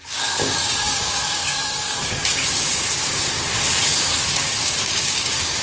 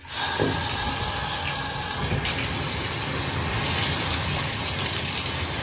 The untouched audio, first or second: second